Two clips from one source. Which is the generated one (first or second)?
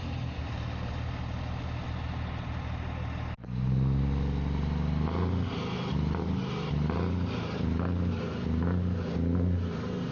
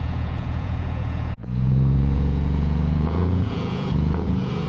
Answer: second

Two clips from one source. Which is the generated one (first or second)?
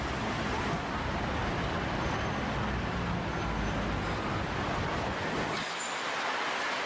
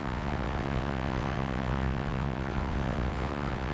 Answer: second